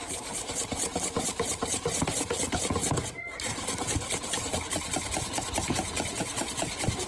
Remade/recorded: recorded